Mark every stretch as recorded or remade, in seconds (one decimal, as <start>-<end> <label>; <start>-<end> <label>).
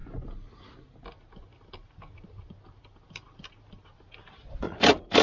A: 0.0-3.1 recorded; 3.1-5.2 remade